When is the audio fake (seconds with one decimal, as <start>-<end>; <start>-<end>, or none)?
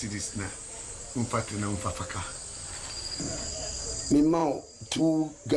none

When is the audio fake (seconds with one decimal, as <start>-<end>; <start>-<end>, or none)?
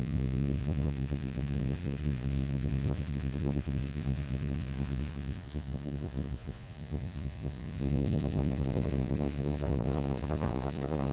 0.0-11.1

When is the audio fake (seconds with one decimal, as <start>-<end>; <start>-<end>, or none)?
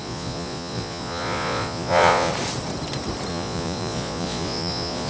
0.0-2.3; 3.3-5.1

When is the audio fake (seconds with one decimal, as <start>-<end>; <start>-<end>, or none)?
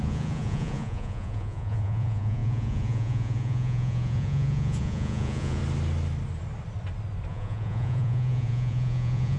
0.0-5.6; 7.3-9.4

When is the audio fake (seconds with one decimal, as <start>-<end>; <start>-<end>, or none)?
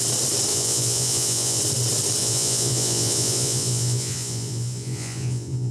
0.5-1.6; 2.2-5.7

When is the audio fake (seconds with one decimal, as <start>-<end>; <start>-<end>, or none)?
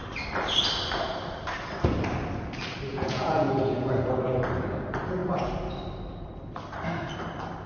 2.9-4.2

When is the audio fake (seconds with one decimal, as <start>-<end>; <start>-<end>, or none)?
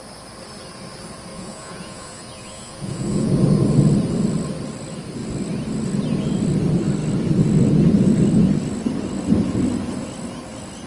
1.3-3.3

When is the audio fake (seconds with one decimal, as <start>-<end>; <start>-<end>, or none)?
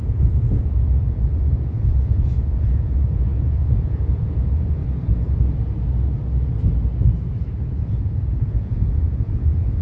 0.0-4.8; 7.6-9.8